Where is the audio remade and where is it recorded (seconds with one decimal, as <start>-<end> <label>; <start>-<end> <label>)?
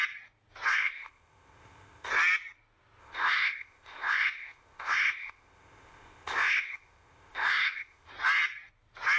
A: 0.0-0.7 recorded; 0.7-2.1 remade; 2.1-3.0 recorded; 3.0-8.1 remade; 8.1-9.2 recorded